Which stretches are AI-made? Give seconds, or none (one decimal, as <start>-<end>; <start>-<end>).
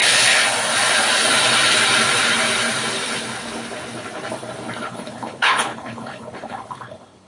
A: 0.0-0.4; 4.8-7.3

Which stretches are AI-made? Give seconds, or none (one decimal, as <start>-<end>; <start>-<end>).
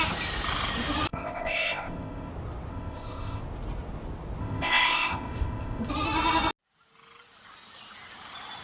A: 1.1-2.3; 2.7-3.4; 4.4-5.9